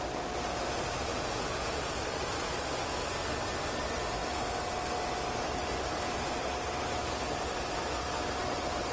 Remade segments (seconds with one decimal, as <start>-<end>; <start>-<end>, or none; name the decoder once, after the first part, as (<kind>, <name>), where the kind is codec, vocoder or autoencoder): 1.1-1.9 (vocoder, Vocos)